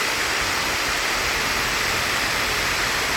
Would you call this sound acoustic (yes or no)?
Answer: yes